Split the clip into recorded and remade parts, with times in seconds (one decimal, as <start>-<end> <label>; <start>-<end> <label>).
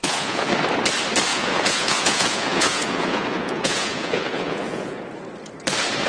0.0-0.5 remade; 0.5-1.3 recorded; 1.3-5.0 remade; 5.0-6.1 recorded